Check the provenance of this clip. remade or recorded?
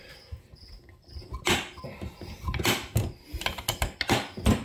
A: recorded